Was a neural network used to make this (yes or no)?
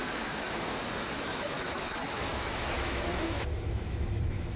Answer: yes